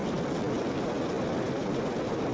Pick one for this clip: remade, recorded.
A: recorded